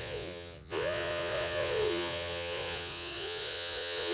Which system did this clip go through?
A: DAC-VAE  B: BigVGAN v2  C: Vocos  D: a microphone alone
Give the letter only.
C